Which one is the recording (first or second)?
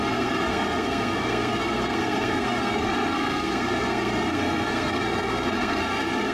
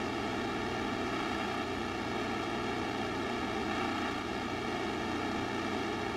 second